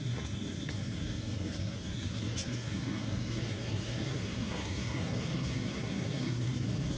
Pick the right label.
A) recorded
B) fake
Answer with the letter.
B